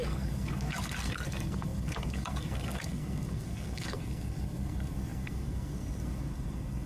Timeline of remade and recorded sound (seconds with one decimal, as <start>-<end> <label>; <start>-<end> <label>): 0.0-6.9 remade